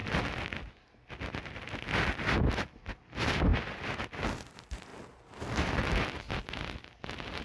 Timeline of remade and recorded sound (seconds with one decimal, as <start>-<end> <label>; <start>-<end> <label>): 0.0-7.4 recorded